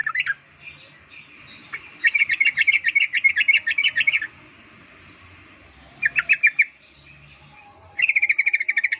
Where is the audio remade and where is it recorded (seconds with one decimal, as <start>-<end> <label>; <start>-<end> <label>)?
0.0-9.0 recorded